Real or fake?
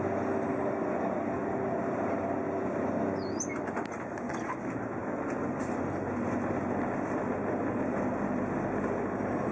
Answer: real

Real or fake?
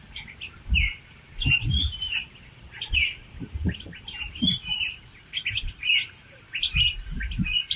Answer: fake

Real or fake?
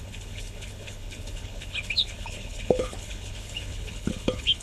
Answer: fake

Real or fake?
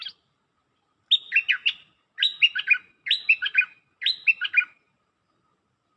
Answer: real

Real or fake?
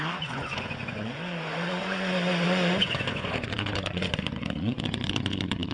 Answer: fake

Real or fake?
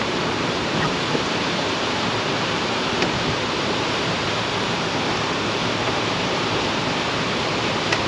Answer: fake